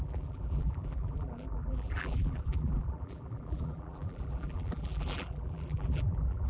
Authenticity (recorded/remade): remade